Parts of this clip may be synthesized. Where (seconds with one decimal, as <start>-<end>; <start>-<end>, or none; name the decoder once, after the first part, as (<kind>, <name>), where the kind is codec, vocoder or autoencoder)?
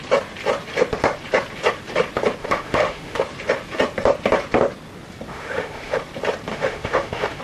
2.4-3.2 (autoencoder, DAC-VAE); 5.3-6.0; 6.5-7.4